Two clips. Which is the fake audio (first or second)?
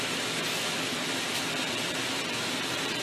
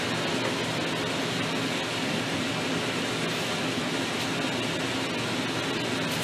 first